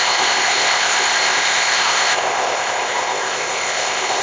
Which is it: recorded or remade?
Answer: remade